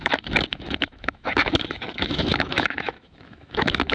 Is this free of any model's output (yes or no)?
no